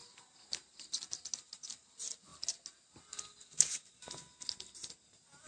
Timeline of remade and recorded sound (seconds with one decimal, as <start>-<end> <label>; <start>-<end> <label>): 0.0-5.5 recorded